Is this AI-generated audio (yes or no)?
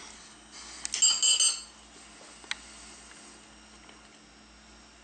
no